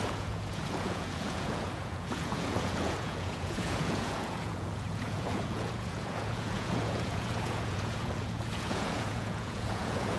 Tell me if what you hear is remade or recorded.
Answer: remade